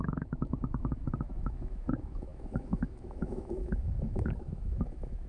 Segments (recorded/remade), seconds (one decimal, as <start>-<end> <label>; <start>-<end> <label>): 0.0-5.3 remade